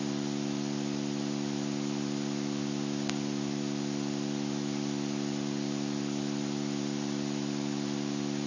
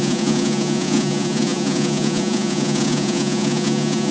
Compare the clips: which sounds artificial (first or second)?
second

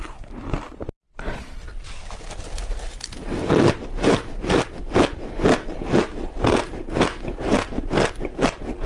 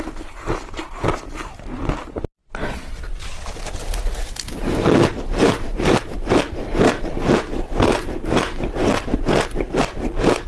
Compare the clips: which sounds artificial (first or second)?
first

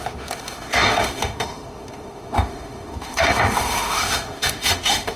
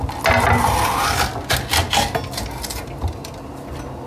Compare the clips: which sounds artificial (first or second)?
first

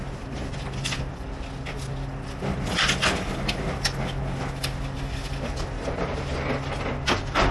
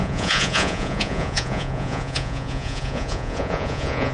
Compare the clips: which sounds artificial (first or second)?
second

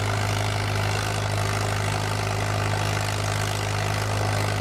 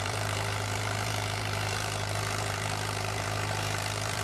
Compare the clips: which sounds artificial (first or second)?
second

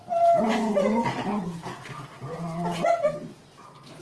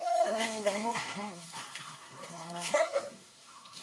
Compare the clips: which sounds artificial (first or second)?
second